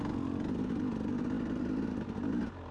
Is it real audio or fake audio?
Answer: real